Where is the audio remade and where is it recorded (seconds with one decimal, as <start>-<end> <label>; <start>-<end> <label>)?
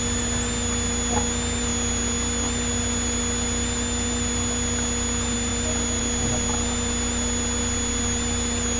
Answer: 0.0-8.8 recorded